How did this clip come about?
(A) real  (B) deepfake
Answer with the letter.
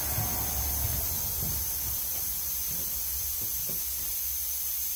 A